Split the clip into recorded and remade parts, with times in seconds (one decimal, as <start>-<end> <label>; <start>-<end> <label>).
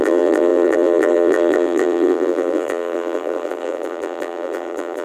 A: 0.0-5.0 remade